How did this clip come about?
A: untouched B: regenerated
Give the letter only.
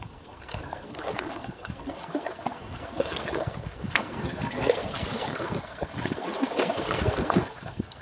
B